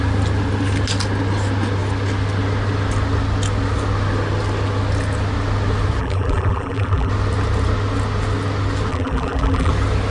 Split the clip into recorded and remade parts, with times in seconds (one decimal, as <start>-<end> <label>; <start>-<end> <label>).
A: 0.0-6.0 recorded; 6.0-7.1 remade; 7.1-8.9 recorded; 8.9-9.7 remade; 9.7-10.1 recorded